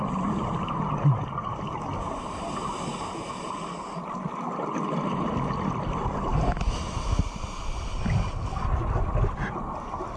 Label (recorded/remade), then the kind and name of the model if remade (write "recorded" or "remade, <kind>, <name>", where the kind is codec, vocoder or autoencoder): recorded